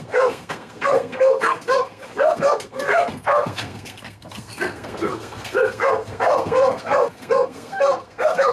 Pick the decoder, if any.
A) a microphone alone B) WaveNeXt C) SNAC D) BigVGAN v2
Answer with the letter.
C